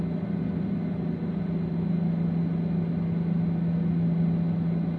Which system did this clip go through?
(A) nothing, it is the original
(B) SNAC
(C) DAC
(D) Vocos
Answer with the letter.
A